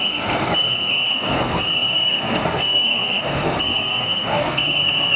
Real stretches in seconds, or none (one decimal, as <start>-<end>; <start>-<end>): none